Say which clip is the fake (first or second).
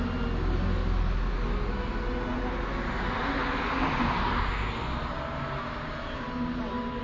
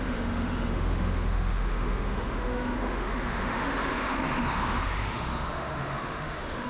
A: second